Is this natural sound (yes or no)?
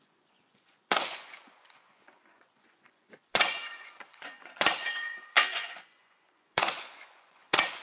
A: no